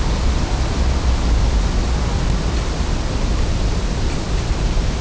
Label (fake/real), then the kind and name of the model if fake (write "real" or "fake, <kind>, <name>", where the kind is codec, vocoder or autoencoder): real